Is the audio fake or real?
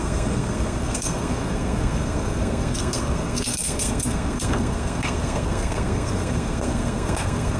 fake